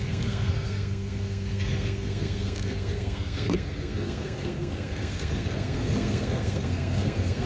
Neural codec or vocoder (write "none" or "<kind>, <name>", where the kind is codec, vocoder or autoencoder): codec, SNAC